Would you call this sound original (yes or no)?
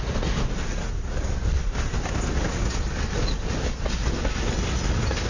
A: yes